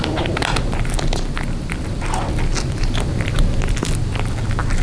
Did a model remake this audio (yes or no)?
no